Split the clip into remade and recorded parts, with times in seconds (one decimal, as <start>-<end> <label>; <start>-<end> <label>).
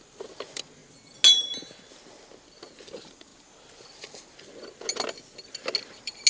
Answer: 0.0-0.8 remade; 0.8-2.8 recorded; 2.8-3.3 remade; 3.3-6.3 recorded